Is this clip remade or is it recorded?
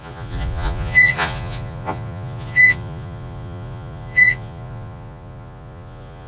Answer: remade